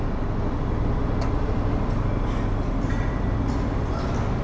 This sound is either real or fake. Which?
real